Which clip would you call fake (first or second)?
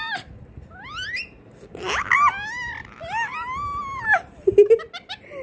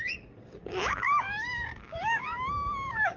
second